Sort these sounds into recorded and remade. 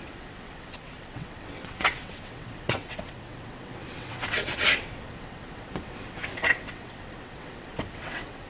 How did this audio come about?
remade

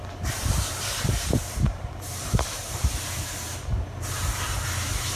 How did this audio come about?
remade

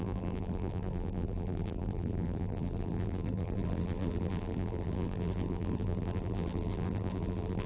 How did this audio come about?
remade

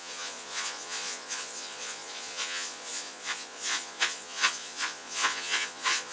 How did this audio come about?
remade